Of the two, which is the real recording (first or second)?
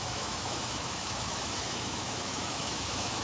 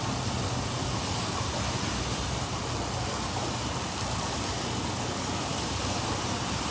second